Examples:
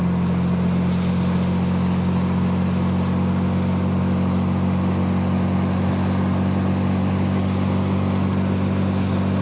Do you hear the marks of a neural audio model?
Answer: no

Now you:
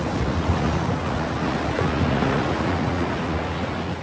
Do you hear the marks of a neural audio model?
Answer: yes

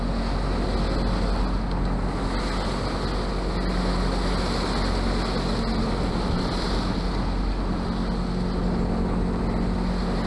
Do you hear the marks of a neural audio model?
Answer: no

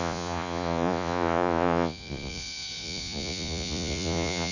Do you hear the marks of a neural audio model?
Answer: yes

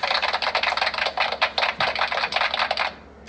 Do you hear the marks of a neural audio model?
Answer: no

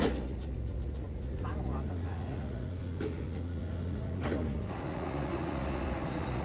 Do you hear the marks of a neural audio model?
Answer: yes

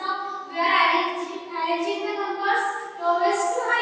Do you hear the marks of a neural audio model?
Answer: no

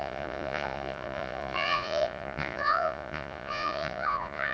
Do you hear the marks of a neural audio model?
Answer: yes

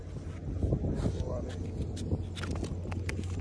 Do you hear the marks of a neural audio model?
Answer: no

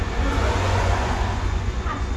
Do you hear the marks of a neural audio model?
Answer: yes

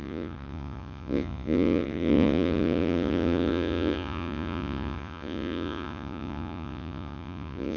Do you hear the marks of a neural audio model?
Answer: yes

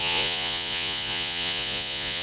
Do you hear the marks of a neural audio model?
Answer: yes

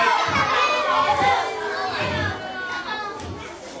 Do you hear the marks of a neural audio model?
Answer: no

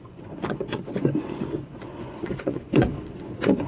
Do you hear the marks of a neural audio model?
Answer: yes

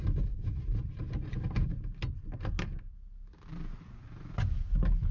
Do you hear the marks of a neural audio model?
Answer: no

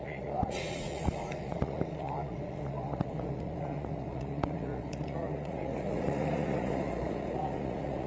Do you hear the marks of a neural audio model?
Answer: yes